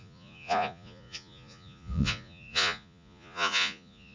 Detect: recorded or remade remade